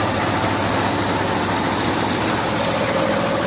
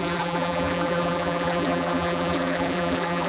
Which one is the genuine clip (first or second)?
first